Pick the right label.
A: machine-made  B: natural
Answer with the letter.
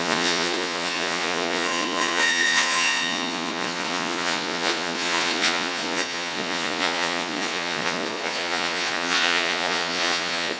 A